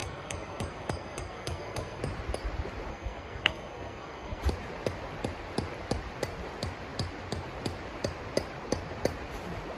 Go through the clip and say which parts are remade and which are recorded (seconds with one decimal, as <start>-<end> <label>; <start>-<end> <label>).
0.0-2.0 remade; 2.0-2.9 recorded; 2.9-4.4 remade; 4.4-9.8 recorded